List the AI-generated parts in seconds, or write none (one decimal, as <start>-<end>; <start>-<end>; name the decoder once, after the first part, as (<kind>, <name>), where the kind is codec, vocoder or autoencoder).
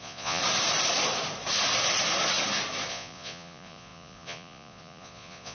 0.0-0.4 (vocoder, Vocos); 2.9-5.5